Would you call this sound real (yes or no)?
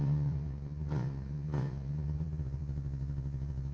no